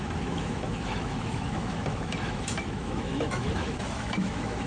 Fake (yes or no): yes